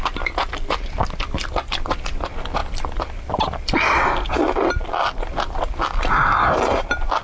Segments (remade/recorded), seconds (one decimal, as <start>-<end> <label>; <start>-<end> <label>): 0.0-7.2 recorded